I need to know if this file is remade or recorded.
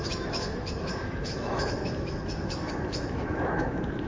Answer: remade